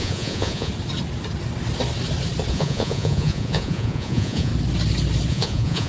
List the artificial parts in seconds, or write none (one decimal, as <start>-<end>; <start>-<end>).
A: 0.0-0.7; 2.5-4.5; 5.3-5.9